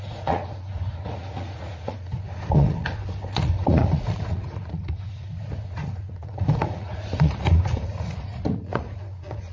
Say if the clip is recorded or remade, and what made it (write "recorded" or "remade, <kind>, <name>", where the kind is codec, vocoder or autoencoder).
remade, vocoder, Vocos